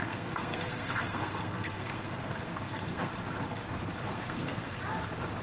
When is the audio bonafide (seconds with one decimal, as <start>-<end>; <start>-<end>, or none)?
3.1-4.0; 4.8-5.4